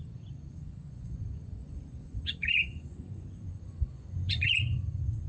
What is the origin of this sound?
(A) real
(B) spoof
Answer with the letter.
B